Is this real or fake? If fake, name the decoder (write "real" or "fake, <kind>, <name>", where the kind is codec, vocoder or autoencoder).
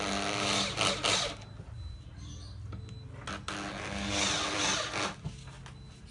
real